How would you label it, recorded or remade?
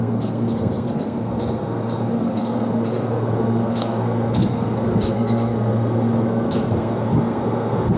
remade